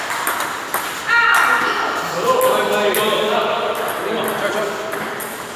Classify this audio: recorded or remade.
recorded